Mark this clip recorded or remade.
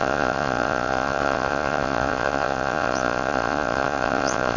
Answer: remade